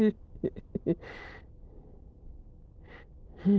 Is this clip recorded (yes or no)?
yes